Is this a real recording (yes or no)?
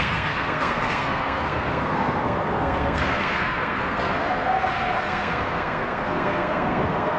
no